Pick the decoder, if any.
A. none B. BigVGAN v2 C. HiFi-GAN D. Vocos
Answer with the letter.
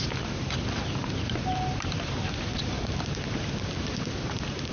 B